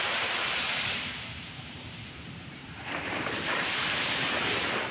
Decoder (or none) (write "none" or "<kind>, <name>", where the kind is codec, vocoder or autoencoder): vocoder, BigVGAN v2